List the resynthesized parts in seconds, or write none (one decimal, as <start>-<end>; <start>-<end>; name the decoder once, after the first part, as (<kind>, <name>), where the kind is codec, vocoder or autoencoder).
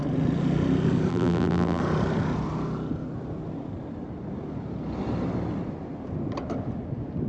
1.1-1.8 (vocoder, BigVGAN v2)